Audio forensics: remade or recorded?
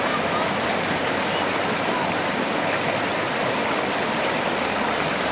recorded